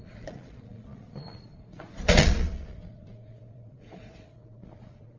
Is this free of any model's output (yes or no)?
no